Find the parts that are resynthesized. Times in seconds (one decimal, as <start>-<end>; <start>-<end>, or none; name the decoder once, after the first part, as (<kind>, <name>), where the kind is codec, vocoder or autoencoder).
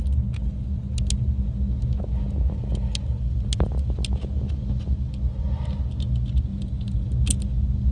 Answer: 6.5-7.1 (vocoder, Vocos)